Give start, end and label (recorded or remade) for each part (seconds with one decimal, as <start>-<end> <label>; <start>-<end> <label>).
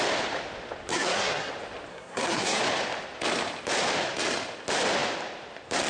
0.0-0.9 recorded; 0.9-1.5 remade; 1.5-1.9 recorded; 1.9-2.6 remade; 2.6-5.9 recorded